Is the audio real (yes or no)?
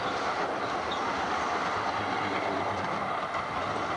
yes